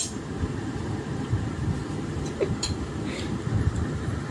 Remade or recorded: remade